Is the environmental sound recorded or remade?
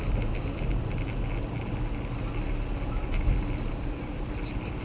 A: recorded